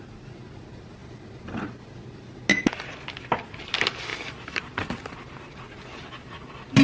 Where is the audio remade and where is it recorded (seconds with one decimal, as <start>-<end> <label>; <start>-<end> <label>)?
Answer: 0.0-4.1 recorded; 4.1-5.3 remade; 5.3-6.8 recorded